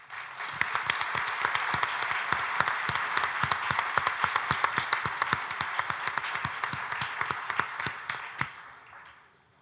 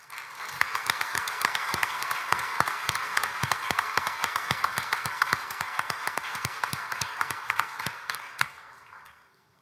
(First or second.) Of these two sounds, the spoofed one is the second